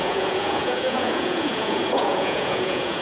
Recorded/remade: remade